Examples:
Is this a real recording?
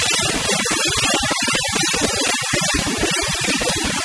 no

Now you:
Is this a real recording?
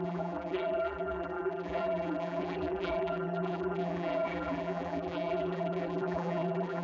no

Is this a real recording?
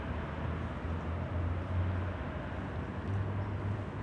yes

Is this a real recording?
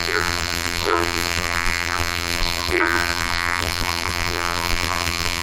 no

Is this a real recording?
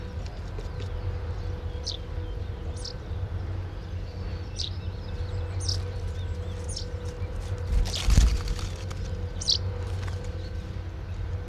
yes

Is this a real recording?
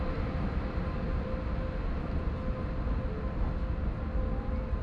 yes